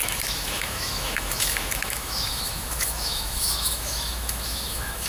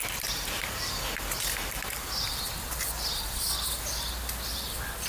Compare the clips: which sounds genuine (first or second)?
second